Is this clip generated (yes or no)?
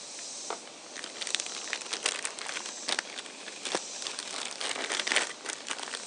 no